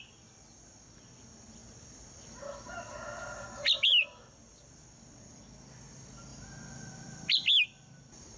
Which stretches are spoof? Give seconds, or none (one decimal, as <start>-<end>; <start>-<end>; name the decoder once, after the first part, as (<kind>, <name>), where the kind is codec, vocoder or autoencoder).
none

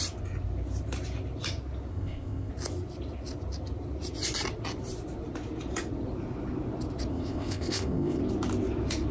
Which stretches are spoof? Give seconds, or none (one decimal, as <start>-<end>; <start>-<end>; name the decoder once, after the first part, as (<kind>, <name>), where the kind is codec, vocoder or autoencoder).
1.9-2.5 (codec, ZipCodec); 7.1-8.2

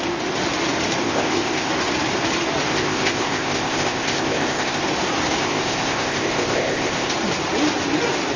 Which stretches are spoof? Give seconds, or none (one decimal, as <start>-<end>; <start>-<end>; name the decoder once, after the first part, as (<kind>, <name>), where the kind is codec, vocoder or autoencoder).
1.0-1.7 (codec, ZipCodec); 2.7-4.8; 5.4-7.1

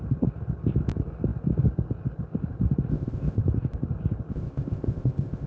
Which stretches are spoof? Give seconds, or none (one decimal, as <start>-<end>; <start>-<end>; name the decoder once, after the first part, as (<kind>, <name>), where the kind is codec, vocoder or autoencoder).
2.9-3.4 (codec, ZipCodec); 4.3-5.5